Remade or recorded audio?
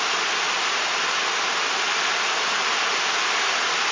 recorded